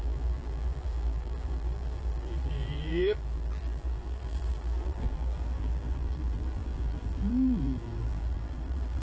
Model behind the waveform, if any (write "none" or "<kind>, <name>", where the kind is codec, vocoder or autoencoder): vocoder, BigVGAN v2